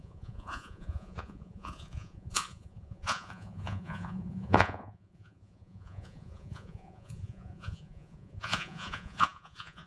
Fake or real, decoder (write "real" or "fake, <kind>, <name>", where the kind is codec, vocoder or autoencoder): fake, vocoder, Vocos